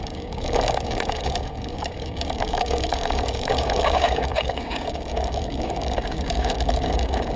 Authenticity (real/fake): fake